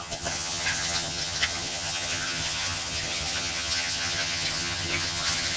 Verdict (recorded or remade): remade